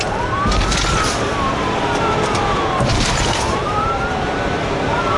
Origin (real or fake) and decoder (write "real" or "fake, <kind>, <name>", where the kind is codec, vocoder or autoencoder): fake, vocoder, BigVGAN v2